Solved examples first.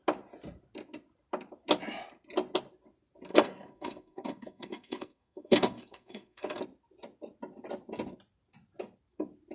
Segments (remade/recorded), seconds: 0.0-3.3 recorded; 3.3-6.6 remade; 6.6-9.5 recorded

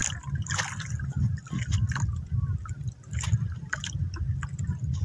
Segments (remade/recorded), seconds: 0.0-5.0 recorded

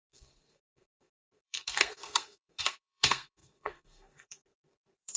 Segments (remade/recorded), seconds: 0.0-5.2 remade

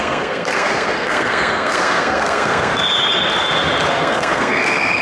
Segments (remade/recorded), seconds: 0.0-2.7 remade; 2.7-3.9 recorded; 3.9-5.0 remade